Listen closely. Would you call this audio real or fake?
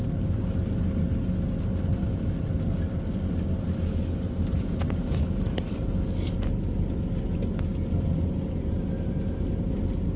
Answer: real